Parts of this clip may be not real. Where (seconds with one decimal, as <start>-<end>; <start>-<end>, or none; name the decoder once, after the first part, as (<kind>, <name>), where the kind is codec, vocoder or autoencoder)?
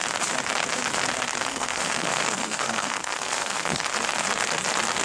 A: 1.5-3.8 (codec, SNAC)